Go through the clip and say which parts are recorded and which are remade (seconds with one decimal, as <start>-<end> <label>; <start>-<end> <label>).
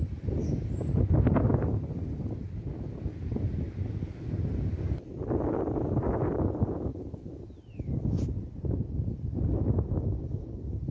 0.0-10.9 recorded